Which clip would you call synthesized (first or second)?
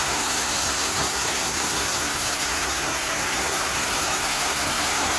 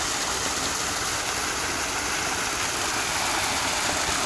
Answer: first